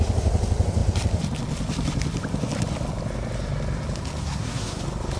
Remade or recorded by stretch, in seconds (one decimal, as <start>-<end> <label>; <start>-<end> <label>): 0.0-4.2 recorded; 4.2-4.8 remade; 4.8-5.2 recorded